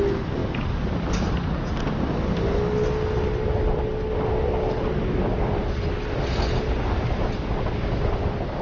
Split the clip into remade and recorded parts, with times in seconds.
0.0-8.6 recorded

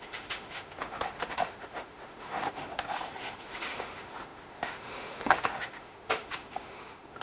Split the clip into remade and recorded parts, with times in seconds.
0.0-7.2 remade

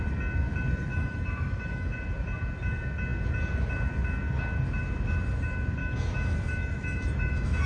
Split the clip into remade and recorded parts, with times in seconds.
0.0-0.9 recorded; 0.9-1.9 remade; 1.9-5.8 recorded; 5.8-7.7 remade